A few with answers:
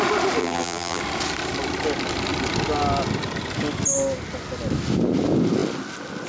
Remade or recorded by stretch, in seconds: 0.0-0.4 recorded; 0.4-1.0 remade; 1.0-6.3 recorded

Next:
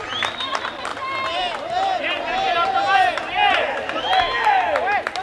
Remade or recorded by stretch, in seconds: 0.0-5.2 recorded

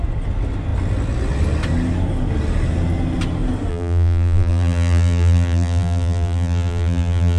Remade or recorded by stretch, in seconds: 0.0-3.7 recorded; 3.7-7.4 remade

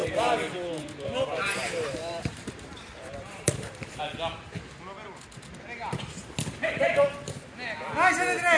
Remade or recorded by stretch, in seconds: 0.0-4.0 remade; 4.0-8.6 recorded

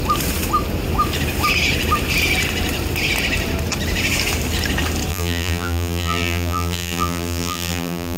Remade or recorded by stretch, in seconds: 0.0-5.1 recorded; 5.1-8.2 remade

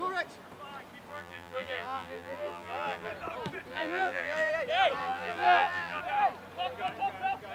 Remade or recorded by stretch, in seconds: 0.0-1.1 recorded; 1.1-3.1 remade; 3.1-3.7 recorded; 3.7-4.5 remade; 4.5-5.0 recorded; 5.0-6.0 remade; 6.0-7.5 recorded

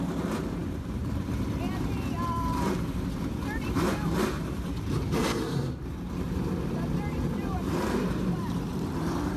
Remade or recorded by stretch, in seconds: 0.0-9.4 remade